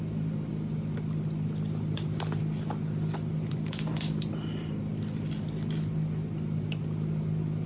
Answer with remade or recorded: recorded